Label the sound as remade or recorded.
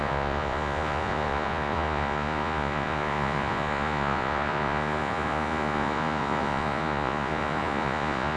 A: remade